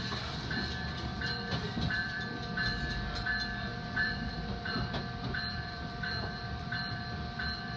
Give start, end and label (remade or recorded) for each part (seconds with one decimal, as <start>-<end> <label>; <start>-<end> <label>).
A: 0.0-1.1 recorded; 1.1-2.2 remade; 2.2-3.7 recorded; 3.7-7.0 remade; 7.0-7.8 recorded